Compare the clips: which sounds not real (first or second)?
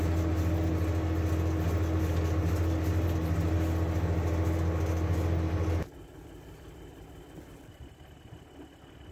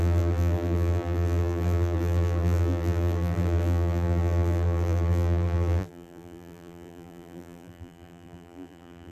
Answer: second